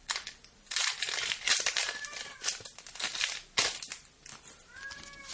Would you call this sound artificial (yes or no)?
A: no